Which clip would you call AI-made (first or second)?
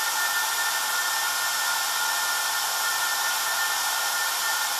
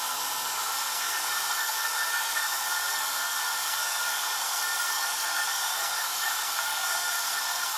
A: second